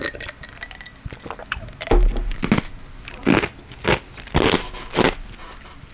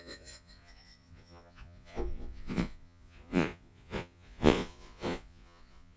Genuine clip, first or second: first